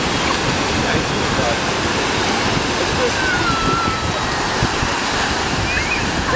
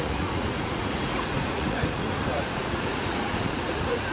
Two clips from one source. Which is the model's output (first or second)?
second